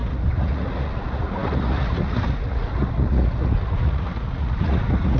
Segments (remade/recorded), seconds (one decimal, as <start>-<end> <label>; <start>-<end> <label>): 0.0-5.2 remade